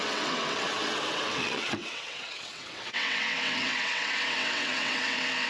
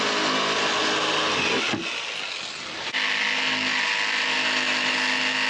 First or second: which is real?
second